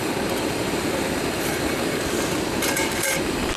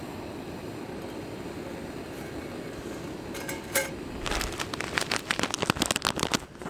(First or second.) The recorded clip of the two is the second